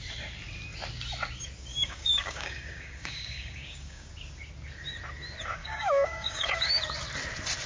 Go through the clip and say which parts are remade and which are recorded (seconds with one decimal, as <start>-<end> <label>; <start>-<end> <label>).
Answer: 0.0-1.7 recorded; 1.7-4.1 remade; 4.1-5.6 recorded; 5.6-6.8 remade; 6.8-7.7 recorded